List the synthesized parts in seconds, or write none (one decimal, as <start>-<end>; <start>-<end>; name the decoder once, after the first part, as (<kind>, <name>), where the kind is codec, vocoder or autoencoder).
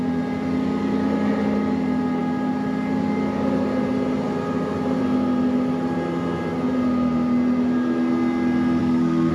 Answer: 8.8-9.3 (codec, SNAC)